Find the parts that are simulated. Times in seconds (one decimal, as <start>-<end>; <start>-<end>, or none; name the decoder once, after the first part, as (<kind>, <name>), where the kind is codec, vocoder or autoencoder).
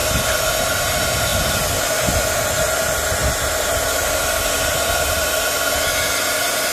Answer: none